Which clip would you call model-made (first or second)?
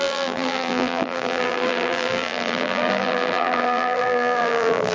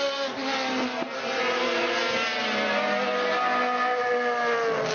first